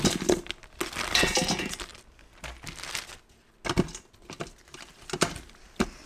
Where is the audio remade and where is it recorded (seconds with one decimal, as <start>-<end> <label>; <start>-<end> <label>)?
0.0-6.1 recorded